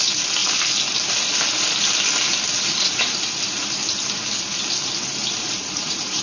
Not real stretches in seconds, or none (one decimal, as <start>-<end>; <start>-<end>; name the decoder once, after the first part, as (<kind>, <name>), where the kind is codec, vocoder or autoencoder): 2.7-3.4 (vocoder, Vocos); 5.4-6.2